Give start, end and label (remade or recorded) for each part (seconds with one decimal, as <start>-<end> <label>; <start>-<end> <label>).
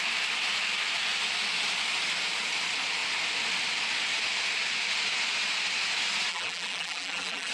0.0-6.3 recorded; 6.3-7.5 remade